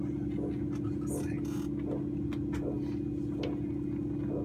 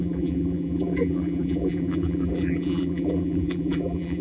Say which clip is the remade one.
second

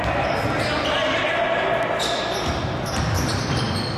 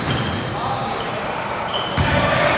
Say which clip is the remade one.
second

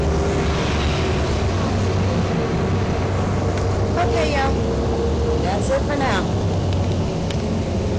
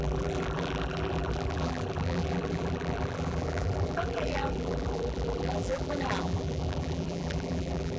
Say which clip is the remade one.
second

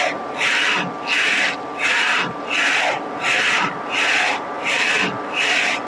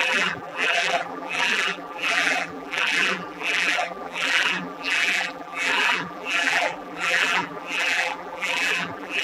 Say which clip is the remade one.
second